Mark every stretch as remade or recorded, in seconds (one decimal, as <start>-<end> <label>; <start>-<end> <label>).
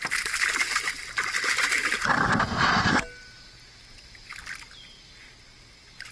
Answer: 0.0-6.1 recorded